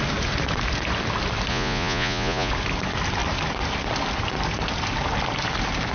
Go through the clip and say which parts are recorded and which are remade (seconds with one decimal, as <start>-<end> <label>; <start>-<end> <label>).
0.0-1.5 recorded; 1.5-2.5 remade; 2.5-5.9 recorded